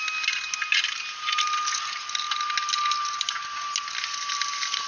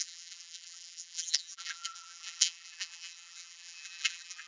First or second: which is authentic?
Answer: first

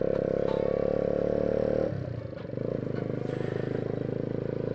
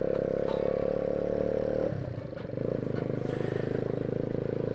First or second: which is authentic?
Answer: first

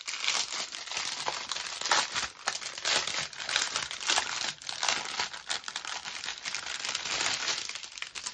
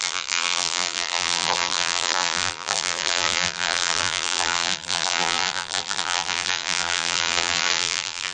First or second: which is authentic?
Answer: first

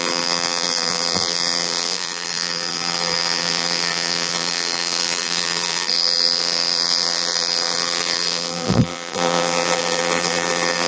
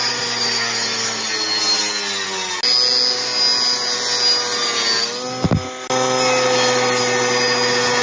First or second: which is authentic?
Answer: second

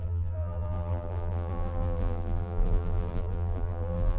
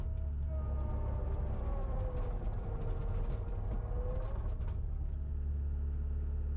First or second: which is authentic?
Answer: second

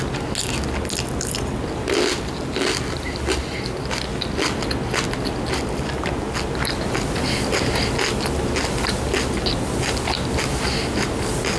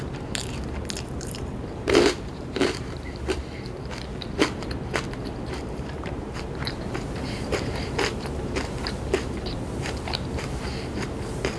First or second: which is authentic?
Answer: first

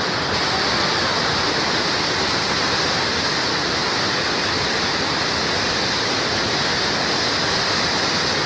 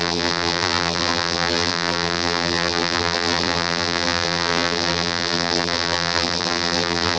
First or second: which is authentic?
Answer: first